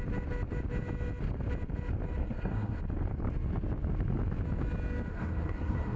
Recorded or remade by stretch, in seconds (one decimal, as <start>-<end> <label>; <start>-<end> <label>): 0.0-2.2 recorded; 2.2-2.8 remade; 2.8-5.1 recorded; 5.1-6.0 remade